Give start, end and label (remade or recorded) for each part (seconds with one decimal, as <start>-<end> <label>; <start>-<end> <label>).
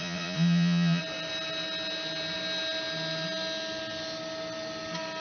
0.0-1.0 remade; 1.0-5.2 recorded